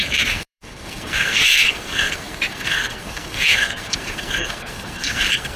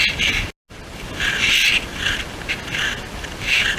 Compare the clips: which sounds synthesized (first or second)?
first